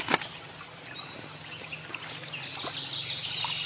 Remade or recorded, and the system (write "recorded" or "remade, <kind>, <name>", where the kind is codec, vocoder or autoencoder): recorded